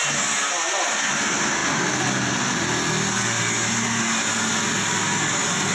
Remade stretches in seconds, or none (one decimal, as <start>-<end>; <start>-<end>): none